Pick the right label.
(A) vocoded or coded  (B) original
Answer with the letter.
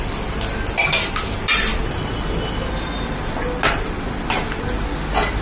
B